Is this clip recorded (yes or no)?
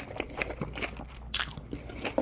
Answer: yes